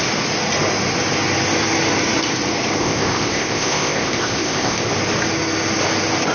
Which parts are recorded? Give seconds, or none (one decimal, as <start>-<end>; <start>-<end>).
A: 0.0-2.8; 4.9-6.3